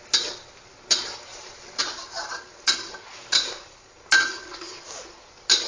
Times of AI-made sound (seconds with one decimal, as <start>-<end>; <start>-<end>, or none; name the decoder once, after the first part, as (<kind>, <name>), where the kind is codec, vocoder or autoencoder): 1.3-1.8 (vocoder, BigVGAN v2)